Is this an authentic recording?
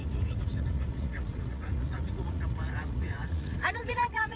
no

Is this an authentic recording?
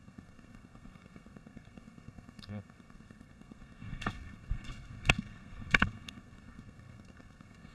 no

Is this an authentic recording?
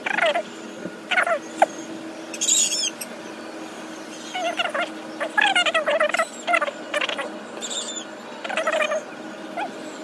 yes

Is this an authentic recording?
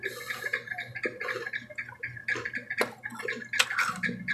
yes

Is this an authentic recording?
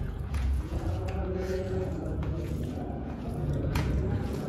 no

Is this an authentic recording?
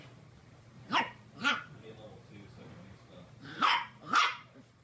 no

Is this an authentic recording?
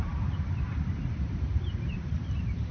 no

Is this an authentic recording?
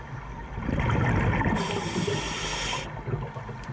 yes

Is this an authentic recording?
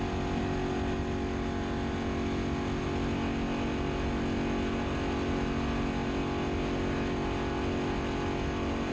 yes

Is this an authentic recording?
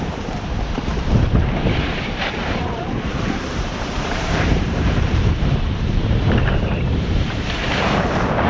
no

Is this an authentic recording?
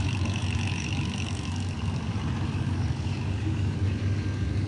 no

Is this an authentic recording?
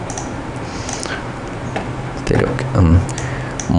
yes